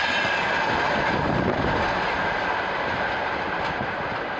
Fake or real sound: real